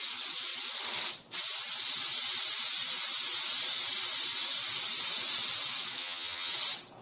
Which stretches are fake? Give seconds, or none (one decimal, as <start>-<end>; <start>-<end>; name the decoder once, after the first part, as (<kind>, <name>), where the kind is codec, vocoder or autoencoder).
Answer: 6.0-6.5 (vocoder, HiFi-GAN)